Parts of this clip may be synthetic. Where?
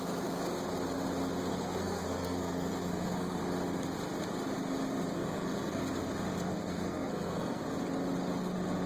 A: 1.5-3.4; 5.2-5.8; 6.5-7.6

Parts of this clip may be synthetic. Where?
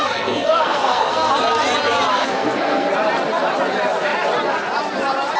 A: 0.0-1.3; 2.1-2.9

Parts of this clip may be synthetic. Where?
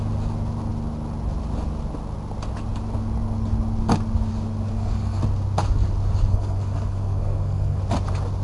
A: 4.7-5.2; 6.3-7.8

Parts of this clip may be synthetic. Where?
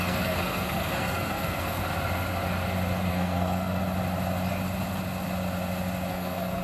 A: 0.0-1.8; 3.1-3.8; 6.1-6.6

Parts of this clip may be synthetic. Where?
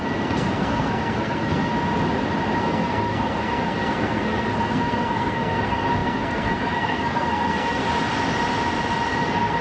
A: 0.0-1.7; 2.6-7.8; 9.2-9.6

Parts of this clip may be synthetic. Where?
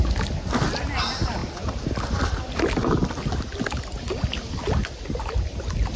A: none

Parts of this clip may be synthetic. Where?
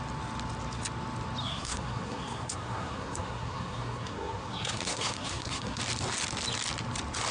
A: 1.4-5.8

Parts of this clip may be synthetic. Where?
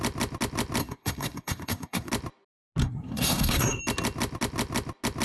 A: 0.8-2.1; 2.8-3.8